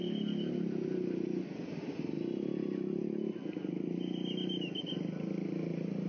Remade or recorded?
recorded